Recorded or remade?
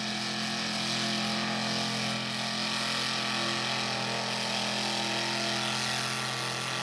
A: recorded